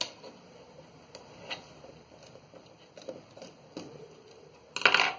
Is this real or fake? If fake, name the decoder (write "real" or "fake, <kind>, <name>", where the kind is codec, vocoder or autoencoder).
real